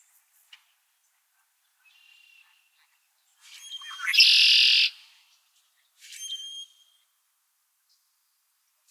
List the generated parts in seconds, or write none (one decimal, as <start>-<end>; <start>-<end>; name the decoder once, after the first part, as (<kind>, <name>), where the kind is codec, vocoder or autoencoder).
none